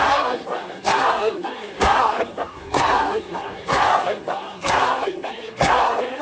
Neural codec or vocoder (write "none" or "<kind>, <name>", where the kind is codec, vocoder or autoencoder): codec, SNAC